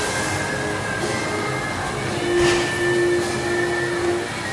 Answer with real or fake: real